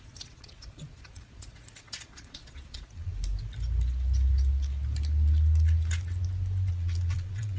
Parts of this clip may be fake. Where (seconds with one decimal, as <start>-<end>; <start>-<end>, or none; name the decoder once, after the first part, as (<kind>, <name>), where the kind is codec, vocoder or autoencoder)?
0.0-3.1 (vocoder, Vocos); 6.7-7.6